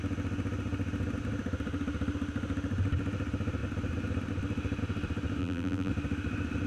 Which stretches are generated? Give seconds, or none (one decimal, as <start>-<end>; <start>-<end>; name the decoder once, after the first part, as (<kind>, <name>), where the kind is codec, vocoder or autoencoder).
5.4-5.9 (vocoder, BigVGAN v2)